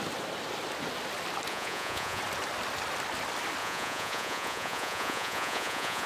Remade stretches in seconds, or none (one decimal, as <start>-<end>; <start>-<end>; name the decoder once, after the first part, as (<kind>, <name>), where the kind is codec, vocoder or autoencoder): 1.5-2.2 (vocoder, Vocos); 3.6-6.1